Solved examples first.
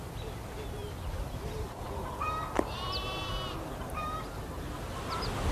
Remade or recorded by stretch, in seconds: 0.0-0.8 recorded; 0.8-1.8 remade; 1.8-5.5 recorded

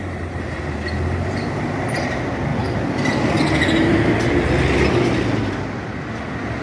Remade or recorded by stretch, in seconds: 0.0-2.5 recorded; 2.5-3.4 remade; 3.4-6.6 recorded